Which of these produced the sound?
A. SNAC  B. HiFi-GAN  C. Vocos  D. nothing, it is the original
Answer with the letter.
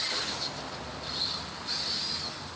D